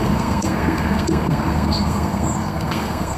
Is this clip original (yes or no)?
no